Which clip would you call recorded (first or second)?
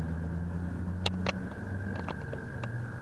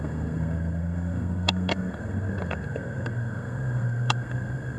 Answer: first